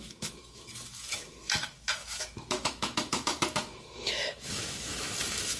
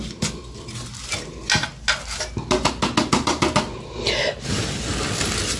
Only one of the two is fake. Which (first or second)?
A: first